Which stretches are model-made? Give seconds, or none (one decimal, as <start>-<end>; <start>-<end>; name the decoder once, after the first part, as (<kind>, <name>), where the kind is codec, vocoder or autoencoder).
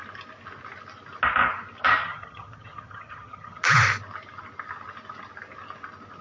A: 2.0-3.6 (vocoder, HiFi-GAN)